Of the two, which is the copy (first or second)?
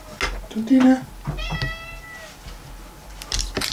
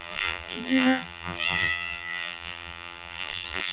second